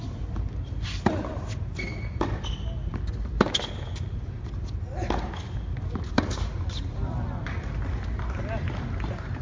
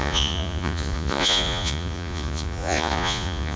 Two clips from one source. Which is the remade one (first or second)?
second